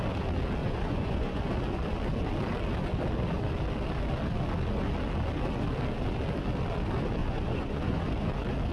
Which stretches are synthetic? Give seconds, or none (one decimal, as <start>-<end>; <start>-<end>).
0.6-1.4; 7.2-8.0